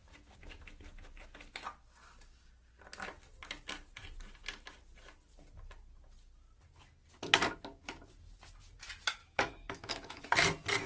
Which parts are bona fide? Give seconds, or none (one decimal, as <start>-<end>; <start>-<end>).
0.0-9.2; 10.2-10.9